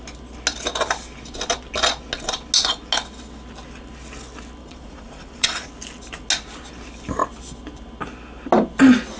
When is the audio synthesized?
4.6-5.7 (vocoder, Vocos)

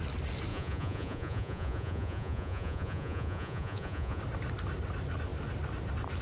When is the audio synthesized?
0.5-4.2 (vocoder, Vocos)

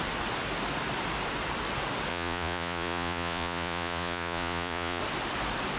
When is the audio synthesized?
2.1-5.0 (vocoder, Vocos)

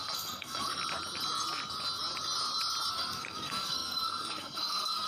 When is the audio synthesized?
0.0-0.8 (codec, SNAC); 2.9-5.1

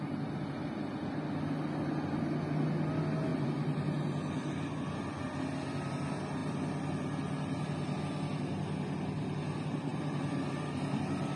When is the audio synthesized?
9.9-10.8 (vocoder, BigVGAN v2)